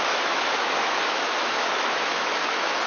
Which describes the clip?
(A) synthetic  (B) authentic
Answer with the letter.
A